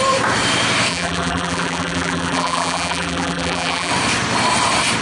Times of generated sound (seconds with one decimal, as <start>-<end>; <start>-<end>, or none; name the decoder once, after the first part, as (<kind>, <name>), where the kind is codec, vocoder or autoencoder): 0.9-3.9 (vocoder, BigVGAN v2)